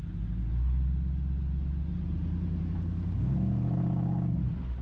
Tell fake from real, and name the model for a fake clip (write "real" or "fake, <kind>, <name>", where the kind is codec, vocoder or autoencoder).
real